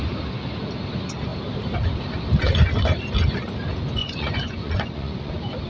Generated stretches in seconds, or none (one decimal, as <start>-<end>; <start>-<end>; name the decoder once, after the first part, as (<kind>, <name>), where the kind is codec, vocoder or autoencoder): 4.0-5.3 (vocoder, Vocos)